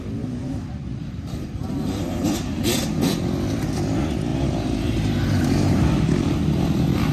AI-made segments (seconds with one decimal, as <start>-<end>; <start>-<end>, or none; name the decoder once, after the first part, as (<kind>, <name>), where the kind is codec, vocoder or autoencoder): 0.4-2.4 (vocoder, BigVGAN v2); 4.3-6.0